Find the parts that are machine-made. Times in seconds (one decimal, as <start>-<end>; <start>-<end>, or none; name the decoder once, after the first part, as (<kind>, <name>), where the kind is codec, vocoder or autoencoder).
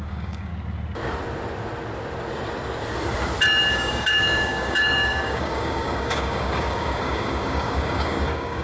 0.0-0.5 (codec, DAC); 3.7-8.6